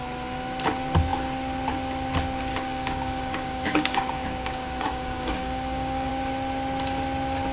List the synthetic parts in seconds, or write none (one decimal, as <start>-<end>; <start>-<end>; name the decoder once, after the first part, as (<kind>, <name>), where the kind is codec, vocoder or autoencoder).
2.5-6.1 (codec, DAC)